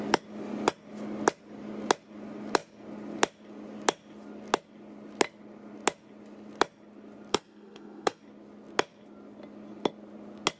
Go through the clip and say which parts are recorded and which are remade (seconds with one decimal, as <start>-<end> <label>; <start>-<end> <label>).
0.0-7.3 recorded; 7.3-8.2 remade; 8.2-10.6 recorded